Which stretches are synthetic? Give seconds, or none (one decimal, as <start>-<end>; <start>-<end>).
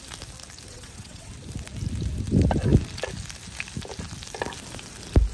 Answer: 0.7-1.3